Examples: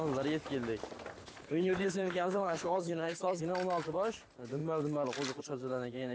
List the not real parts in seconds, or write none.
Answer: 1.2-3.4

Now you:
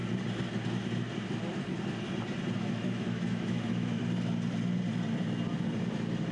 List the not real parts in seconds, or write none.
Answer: 2.6-4.0

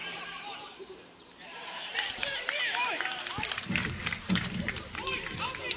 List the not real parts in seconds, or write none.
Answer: 0.0-3.3